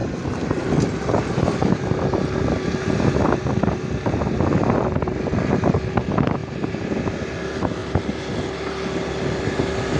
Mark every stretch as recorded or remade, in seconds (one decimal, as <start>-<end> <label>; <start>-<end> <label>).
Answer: 0.0-1.2 remade; 1.2-6.4 recorded; 6.4-7.0 remade; 7.0-10.0 recorded